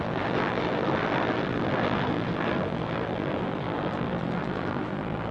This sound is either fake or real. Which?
fake